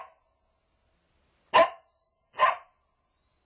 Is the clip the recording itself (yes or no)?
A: yes